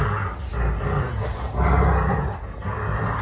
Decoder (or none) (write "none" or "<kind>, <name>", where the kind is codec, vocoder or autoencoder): none